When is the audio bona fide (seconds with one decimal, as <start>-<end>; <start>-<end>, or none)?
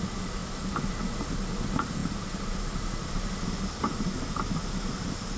0.0-5.4